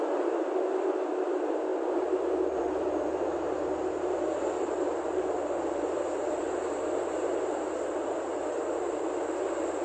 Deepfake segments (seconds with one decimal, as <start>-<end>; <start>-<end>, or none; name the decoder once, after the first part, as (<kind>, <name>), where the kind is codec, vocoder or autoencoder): 0.0-9.8 (vocoder, BigVGAN v2)